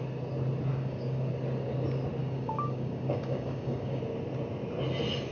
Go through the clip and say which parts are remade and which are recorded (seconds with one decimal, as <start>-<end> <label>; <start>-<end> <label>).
0.0-0.7 recorded; 0.7-1.3 remade; 1.3-2.2 recorded; 2.2-4.0 remade; 4.0-5.3 recorded